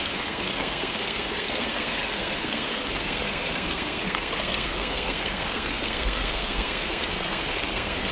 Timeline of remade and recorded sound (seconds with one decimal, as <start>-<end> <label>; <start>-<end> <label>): 0.0-8.1 remade